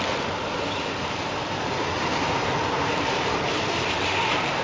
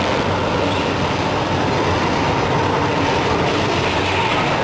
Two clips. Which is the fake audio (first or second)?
first